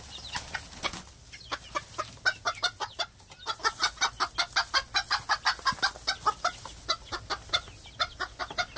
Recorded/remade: recorded